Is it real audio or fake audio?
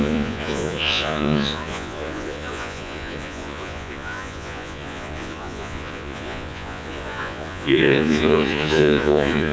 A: fake